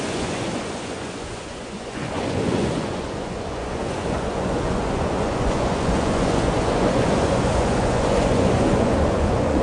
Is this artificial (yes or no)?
yes